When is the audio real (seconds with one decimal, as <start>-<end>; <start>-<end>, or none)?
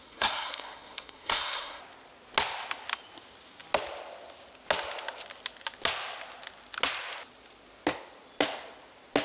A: 1.8-9.2